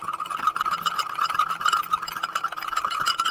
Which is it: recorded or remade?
recorded